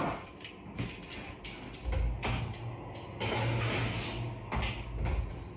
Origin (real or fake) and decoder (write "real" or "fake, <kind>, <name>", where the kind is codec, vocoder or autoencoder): real